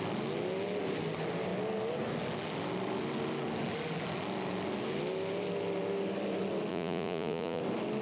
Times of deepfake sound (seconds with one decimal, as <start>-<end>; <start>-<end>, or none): 6.7-7.6